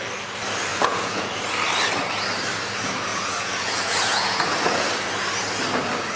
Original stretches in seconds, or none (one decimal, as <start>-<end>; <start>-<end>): 0.0-0.7; 1.3-3.1; 4.9-6.2